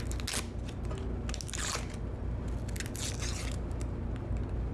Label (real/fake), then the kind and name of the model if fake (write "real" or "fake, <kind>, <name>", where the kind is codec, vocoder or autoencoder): real